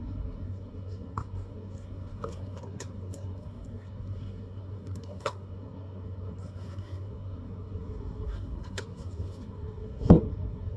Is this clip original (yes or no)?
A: no